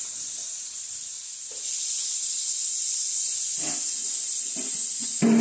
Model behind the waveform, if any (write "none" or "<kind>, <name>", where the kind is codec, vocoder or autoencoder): none